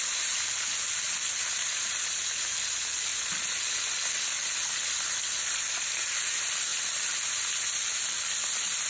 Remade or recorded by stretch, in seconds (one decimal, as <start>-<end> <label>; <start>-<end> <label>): 0.0-0.7 remade; 0.7-1.4 recorded; 1.4-3.1 remade; 3.1-5.8 recorded; 5.8-6.7 remade; 6.7-8.5 recorded; 8.5-8.9 remade

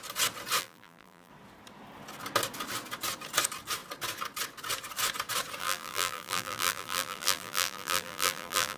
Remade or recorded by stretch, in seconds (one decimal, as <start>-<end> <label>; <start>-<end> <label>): 0.0-0.6 recorded; 0.6-1.3 remade; 1.3-5.6 recorded; 5.6-8.8 remade